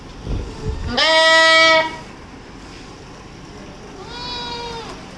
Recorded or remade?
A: recorded